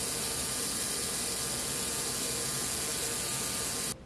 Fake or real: real